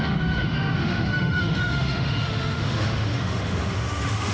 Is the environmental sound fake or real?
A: fake